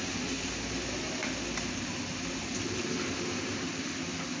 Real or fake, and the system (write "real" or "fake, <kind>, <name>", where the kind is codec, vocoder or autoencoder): real